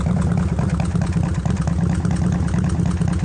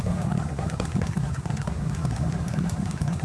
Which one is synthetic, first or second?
second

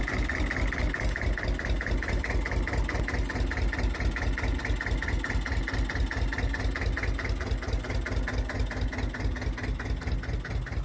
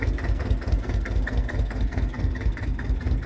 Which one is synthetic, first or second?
second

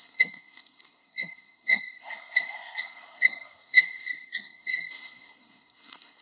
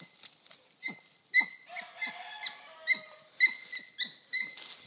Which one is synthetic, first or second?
first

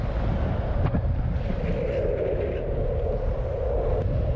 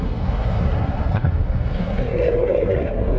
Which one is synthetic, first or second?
second